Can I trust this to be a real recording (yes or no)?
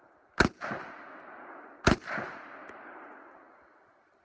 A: yes